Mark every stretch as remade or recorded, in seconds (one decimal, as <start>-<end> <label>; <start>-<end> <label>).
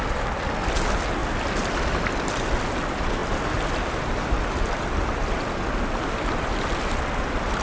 0.0-7.6 recorded